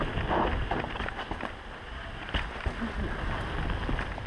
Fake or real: real